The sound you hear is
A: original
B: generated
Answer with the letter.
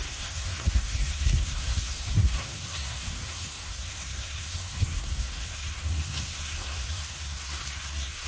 B